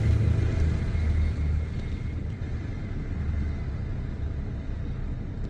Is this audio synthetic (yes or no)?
no